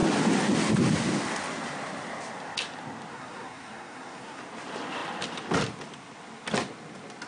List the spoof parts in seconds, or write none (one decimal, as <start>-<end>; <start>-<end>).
3.1-4.4